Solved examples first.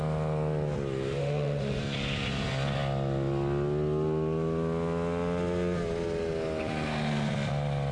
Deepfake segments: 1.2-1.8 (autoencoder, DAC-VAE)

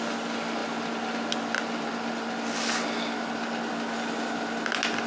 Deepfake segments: none